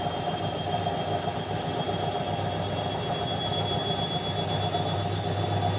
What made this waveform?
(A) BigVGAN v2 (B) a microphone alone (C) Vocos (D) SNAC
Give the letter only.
B